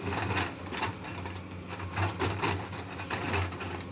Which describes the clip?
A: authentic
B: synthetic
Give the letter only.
A